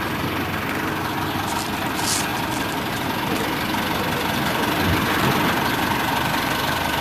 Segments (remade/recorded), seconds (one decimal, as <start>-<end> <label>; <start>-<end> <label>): 0.0-2.3 recorded; 2.3-2.9 remade; 2.9-7.0 recorded